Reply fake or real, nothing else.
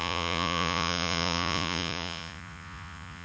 fake